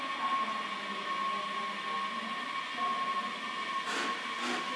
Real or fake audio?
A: real